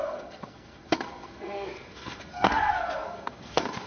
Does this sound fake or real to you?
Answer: fake